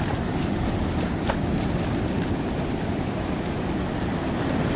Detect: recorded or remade recorded